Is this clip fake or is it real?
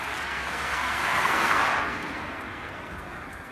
fake